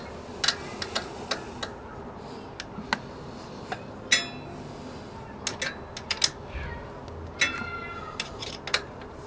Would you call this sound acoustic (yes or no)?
yes